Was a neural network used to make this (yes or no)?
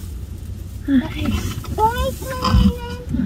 no